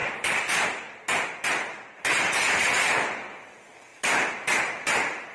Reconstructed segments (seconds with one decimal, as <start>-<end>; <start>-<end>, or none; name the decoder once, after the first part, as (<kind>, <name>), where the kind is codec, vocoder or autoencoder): 0.0-1.0 (vocoder, BigVGAN v2); 1.4-2.0; 3.9-4.6